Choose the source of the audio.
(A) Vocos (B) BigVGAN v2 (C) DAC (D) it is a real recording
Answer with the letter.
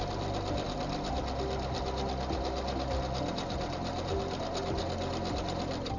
D